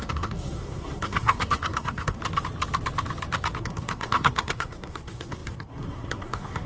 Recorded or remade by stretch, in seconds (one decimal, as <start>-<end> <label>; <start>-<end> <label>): 0.0-2.2 remade; 2.2-3.6 recorded; 3.6-6.7 remade